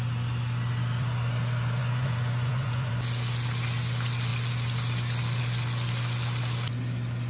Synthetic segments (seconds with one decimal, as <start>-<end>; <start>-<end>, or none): 1.8-2.9